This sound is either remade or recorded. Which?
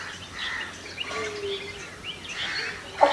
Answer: recorded